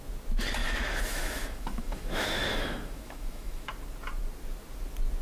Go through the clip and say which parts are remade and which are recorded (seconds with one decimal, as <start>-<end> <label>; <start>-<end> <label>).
0.0-0.6 recorded; 0.6-3.7 remade; 3.7-5.2 recorded